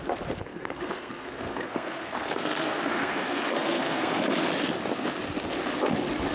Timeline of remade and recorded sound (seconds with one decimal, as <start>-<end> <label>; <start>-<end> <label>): 0.0-0.5 recorded; 0.5-4.2 remade; 4.2-6.3 recorded